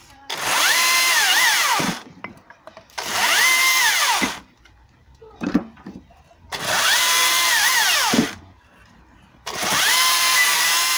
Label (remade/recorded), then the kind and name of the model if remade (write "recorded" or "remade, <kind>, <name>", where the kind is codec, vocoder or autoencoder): remade, vocoder, BigVGAN v2